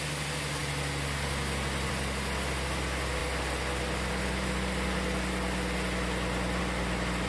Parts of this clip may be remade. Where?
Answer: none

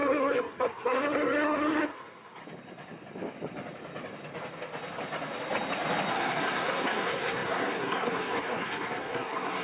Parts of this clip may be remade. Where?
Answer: 0.0-2.4; 6.1-9.6

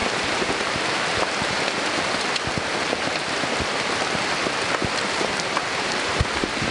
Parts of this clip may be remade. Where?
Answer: 0.0-0.8; 4.8-6.2